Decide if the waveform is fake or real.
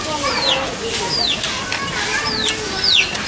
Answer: real